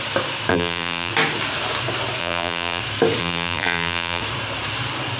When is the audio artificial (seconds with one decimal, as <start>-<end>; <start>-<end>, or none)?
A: 0.5-1.1; 2.2-2.8; 3.2-4.2